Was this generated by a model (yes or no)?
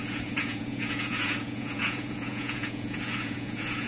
yes